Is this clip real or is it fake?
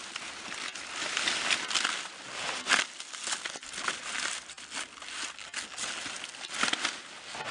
real